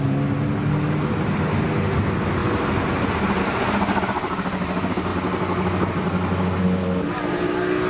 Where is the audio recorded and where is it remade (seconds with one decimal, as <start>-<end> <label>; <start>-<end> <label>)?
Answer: 0.0-7.9 recorded